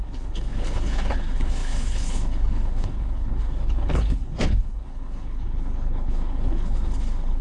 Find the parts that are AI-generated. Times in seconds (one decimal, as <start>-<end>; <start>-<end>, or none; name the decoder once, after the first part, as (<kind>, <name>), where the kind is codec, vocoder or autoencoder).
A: 0.0-7.4 (codec, HILCodec)